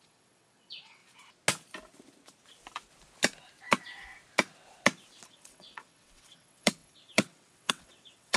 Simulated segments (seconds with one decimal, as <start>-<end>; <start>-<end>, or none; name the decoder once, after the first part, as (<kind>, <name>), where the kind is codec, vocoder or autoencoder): 0.0-1.0 (vocoder, WaveNeXt); 5.3-8.4